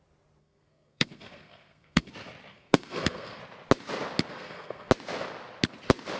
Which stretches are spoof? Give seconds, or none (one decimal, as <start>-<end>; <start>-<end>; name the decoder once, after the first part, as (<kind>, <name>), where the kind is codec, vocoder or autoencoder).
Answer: 0.4-2.1 (codec, SNAC); 2.5-3.4; 4.3-4.9